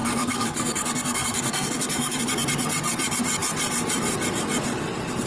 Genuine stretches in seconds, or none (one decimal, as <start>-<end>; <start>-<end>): 2.2-5.3